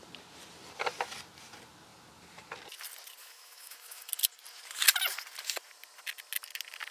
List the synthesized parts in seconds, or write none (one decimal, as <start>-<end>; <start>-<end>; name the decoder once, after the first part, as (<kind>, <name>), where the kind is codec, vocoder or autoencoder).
3.2-4.1 (autoencoder, DAC-VAE)